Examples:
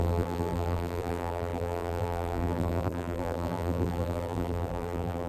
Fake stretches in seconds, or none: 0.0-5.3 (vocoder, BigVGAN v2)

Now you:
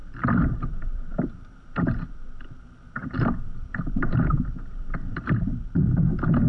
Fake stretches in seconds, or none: 0.0-2.1 (vocoder, BigVGAN v2); 3.0-5.6

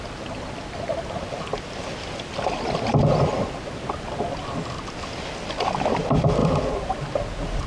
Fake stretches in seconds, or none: none